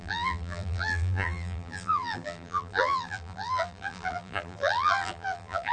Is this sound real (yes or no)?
no